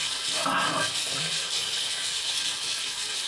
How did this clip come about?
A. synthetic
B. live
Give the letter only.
A